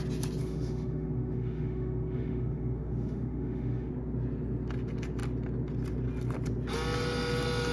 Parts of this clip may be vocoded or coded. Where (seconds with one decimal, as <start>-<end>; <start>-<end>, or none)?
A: 0.4-3.9